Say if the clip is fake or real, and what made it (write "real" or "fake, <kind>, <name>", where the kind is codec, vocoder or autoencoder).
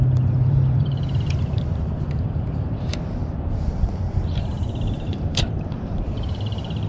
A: fake, vocoder, BigVGAN v2